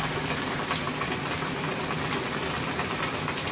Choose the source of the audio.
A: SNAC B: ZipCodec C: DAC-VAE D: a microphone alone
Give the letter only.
D